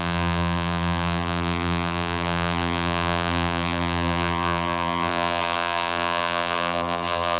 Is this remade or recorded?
remade